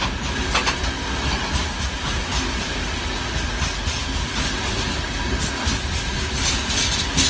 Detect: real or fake real